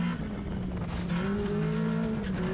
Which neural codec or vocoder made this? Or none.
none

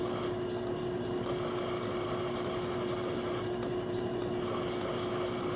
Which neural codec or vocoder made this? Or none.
none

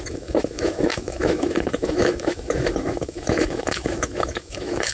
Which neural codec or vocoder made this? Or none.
autoencoder, DAC-VAE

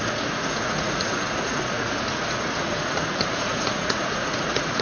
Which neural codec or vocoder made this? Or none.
vocoder, Vocos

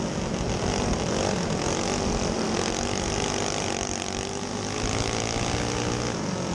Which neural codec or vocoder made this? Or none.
none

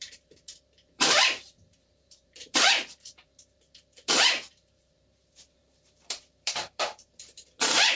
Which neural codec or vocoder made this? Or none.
vocoder, BigVGAN v2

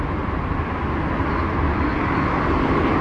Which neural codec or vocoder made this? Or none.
none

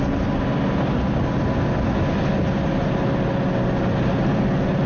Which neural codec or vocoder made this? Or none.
none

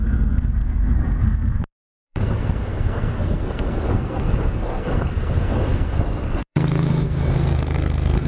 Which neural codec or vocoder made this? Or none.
codec, SNAC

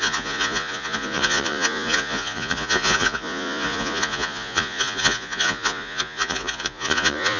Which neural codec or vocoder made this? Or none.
vocoder, Vocos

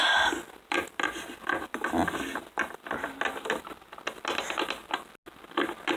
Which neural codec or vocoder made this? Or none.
none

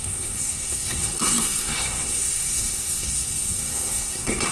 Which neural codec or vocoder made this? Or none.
codec, SNAC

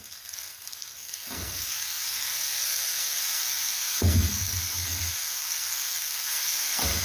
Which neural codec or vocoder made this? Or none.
codec, SNAC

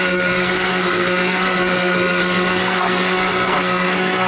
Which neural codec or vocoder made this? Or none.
codec, SNAC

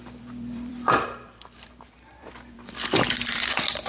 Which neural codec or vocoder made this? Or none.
vocoder, BigVGAN v2